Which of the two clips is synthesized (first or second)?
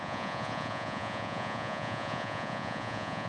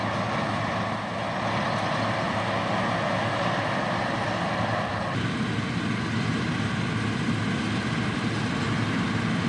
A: first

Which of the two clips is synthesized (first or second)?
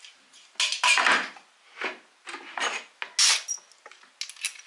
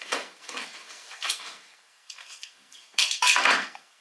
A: second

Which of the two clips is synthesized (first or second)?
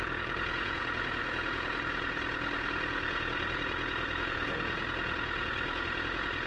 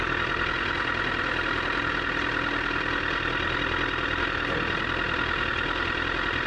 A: first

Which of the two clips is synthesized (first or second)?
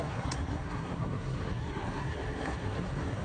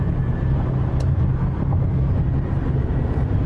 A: first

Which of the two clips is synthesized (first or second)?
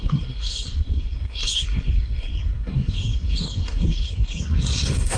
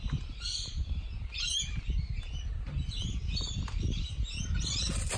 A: first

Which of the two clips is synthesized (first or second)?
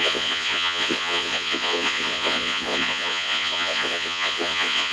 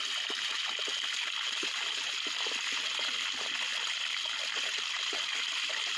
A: first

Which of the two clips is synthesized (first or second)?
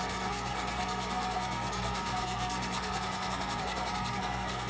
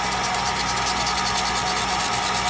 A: first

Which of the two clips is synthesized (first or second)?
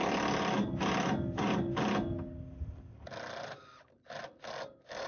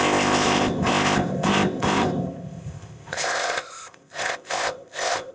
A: second